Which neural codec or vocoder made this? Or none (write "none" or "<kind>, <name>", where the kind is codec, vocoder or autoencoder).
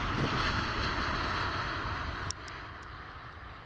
none